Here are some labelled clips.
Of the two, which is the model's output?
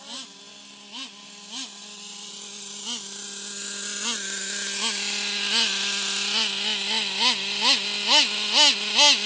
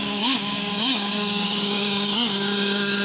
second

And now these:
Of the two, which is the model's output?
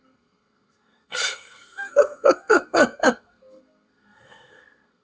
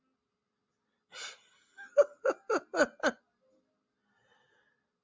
first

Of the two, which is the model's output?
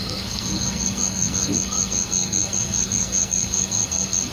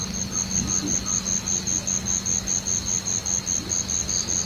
first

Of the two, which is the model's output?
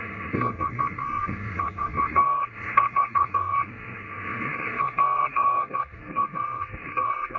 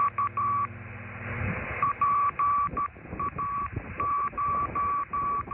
first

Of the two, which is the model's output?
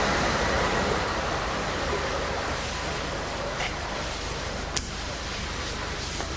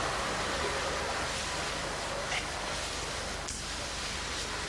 first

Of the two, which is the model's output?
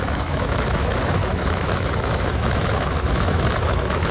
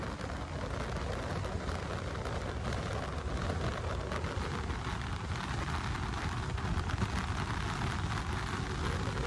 first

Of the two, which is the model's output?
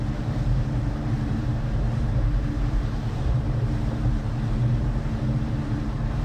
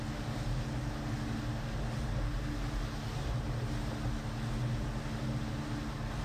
first